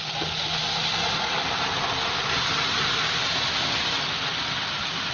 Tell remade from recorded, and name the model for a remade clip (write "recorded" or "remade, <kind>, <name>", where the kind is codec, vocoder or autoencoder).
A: recorded